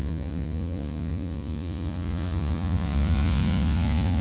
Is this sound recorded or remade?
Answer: remade